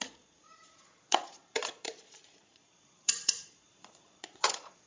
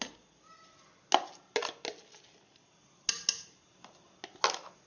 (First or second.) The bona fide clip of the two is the second